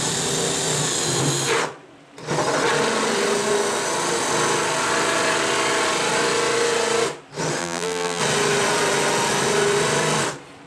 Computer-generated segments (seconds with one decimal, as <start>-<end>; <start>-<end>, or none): 7.6-8.2